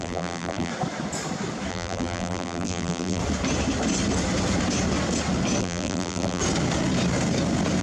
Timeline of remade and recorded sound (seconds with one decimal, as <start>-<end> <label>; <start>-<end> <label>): 0.0-0.7 remade; 0.7-1.7 recorded; 1.7-3.2 remade; 3.2-5.6 recorded; 5.6-6.4 remade; 6.4-7.8 recorded